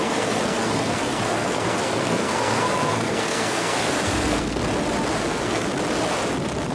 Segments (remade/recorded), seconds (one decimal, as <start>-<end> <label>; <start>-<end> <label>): 0.0-4.6 remade; 4.6-5.2 recorded; 5.2-5.7 remade; 5.7-6.7 recorded